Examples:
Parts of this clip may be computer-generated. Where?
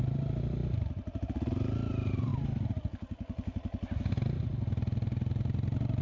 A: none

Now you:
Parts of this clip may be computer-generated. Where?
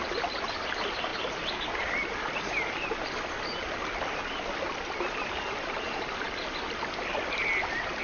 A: none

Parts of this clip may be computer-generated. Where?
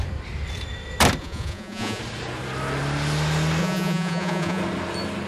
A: 1.2-2.0 (vocoder, Vocos); 3.6-4.6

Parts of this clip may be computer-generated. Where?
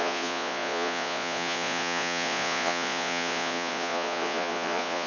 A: 0.0-5.1 (vocoder, Vocos)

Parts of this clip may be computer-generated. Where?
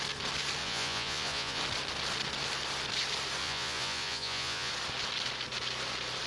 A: 0.6-1.6 (vocoder, Vocos); 3.4-4.7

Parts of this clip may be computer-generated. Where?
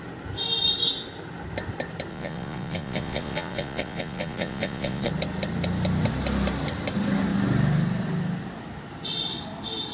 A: 2.1-5.1 (vocoder, Vocos)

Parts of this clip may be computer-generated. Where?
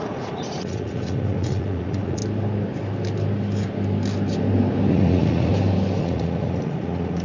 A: 0.0-2.2 (vocoder, Vocos); 4.9-5.5; 6.0-7.2